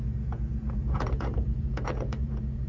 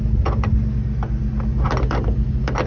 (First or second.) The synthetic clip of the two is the first